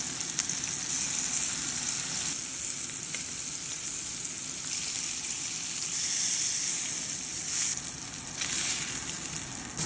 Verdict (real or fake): real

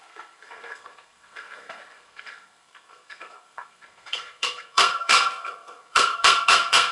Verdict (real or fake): fake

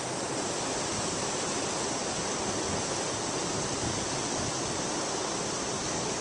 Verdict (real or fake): real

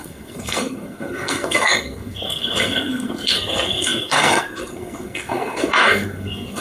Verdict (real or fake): fake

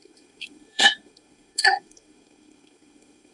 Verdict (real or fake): fake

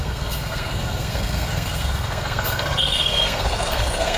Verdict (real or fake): fake